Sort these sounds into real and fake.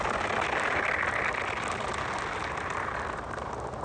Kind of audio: real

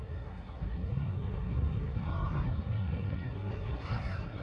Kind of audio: fake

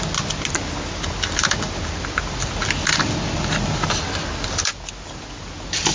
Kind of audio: real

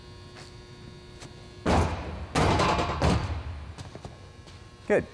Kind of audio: real